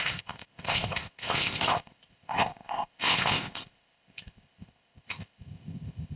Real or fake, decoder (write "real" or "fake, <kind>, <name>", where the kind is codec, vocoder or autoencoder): fake, codec, ZipCodec